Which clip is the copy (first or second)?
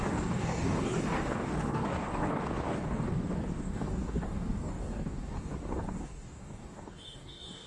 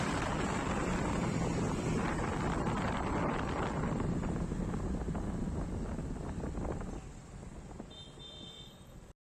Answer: first